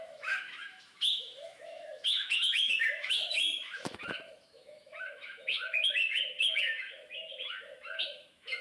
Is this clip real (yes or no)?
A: no